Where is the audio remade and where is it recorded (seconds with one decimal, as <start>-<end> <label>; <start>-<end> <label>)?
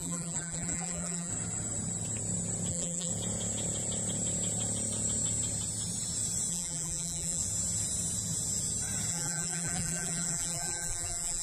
0.0-1.3 remade; 1.3-2.7 recorded; 2.7-3.1 remade; 3.1-6.5 recorded; 6.5-7.4 remade; 7.4-9.1 recorded; 9.1-11.4 remade